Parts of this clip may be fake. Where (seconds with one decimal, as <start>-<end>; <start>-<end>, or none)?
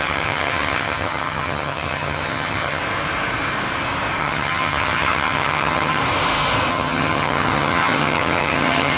0.0-2.8; 4.2-6.0; 6.7-9.0